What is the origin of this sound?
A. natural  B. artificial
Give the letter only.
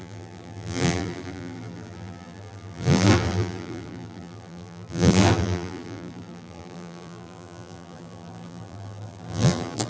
B